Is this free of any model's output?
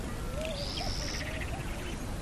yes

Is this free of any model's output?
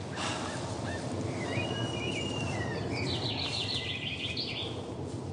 no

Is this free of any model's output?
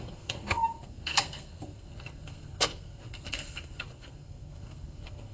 no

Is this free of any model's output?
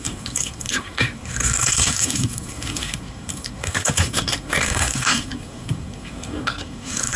no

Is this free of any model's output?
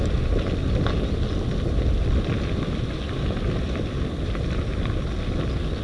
yes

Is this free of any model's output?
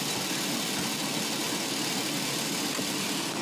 yes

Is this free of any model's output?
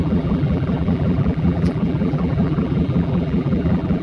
no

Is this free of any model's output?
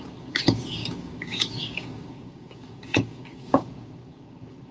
no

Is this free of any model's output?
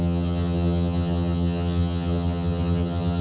no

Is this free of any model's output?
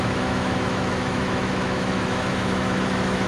no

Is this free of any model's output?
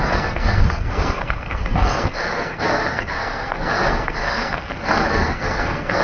no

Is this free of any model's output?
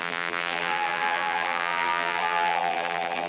no